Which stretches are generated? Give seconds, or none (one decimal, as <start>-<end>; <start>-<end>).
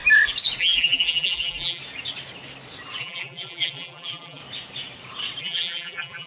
0.6-1.8; 3.0-4.4; 5.4-6.3